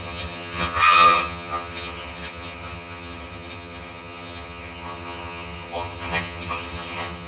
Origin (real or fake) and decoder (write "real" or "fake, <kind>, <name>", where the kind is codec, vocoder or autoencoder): fake, vocoder, HiFi-GAN